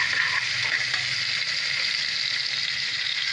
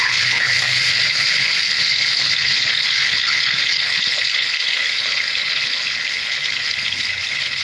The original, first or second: first